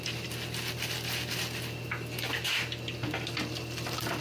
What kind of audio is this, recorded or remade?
recorded